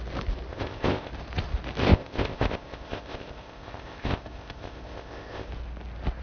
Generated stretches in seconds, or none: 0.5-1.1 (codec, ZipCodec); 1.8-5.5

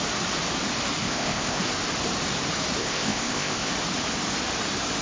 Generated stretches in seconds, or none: 1.0-1.6 (codec, ZipCodec); 2.8-3.7

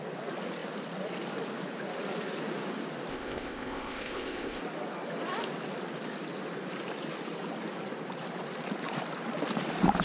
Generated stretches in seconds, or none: 3.1-4.6 (codec, ZipCodec)

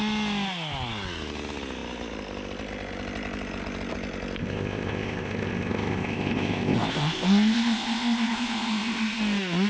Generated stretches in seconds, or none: 4.4-9.2 (codec, ZipCodec)

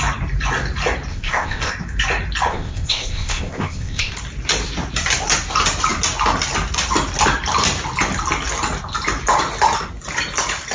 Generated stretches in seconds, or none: 1.1-1.7 (codec, ZipCodec); 2.5-4.1